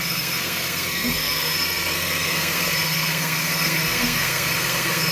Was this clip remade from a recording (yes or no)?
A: yes